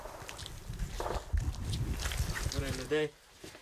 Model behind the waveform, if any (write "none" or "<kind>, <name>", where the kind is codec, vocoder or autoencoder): none